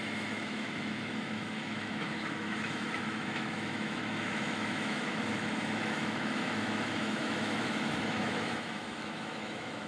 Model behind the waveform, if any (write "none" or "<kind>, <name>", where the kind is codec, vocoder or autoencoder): autoencoder, DAC-VAE